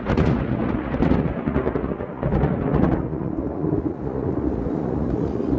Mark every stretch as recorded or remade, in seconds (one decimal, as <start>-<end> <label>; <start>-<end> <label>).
0.0-5.6 remade